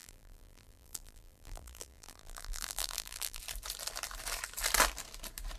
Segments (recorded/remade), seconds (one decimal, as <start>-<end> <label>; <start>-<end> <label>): 0.0-3.4 remade; 3.4-5.6 recorded